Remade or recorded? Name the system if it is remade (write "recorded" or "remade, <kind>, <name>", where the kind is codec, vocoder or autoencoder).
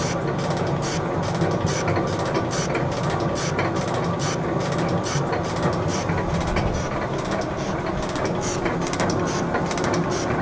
recorded